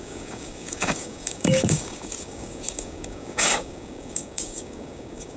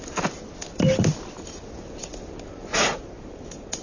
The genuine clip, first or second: second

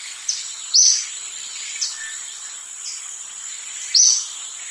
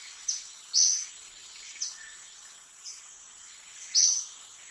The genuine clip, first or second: first